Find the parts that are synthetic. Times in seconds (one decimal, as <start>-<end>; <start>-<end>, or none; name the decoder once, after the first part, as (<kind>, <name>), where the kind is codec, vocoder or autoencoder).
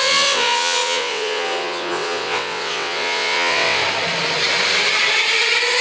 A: 0.0-3.8 (vocoder, WaveNeXt)